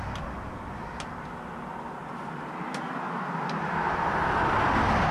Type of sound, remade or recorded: recorded